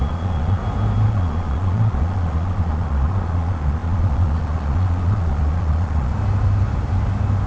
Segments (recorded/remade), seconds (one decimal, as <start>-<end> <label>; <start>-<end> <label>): 0.0-0.6 remade; 0.6-1.1 recorded; 1.1-6.1 remade; 6.1-7.5 recorded